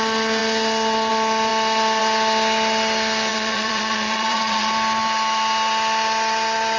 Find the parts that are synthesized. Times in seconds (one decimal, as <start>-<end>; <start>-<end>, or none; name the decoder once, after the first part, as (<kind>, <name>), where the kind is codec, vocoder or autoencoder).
3.3-4.7 (vocoder, Vocos)